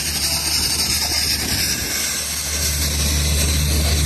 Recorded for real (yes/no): yes